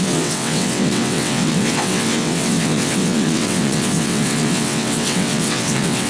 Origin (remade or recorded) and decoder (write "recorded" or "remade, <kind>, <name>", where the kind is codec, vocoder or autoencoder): remade, vocoder, WaveNeXt